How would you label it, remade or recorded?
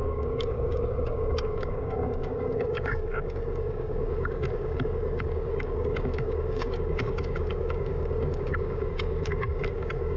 remade